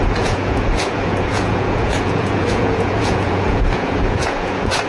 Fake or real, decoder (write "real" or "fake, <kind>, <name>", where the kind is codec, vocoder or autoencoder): fake, vocoder, Vocos